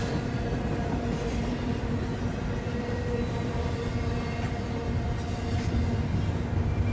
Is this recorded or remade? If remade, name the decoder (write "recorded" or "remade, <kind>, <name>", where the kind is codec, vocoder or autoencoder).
recorded